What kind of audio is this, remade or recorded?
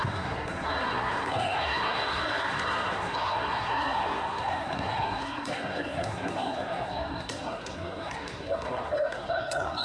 remade